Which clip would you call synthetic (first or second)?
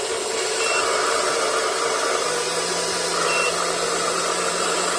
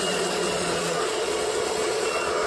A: second